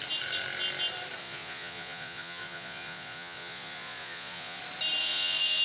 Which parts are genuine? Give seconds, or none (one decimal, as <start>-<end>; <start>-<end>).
0.0-1.2; 4.6-5.0